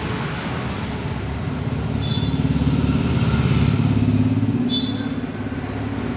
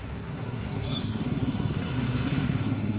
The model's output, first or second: second